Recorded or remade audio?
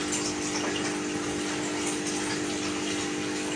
recorded